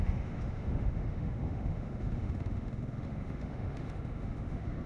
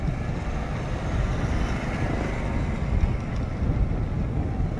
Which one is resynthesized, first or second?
first